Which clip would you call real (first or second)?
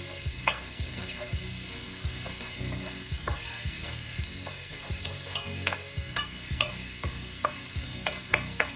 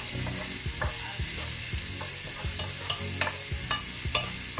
second